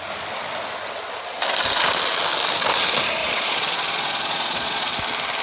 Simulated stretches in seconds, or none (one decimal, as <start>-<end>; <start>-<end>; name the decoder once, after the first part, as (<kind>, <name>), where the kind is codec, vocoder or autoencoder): 3.2-4.9 (vocoder, Vocos)